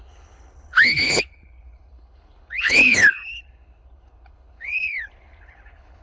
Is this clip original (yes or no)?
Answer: no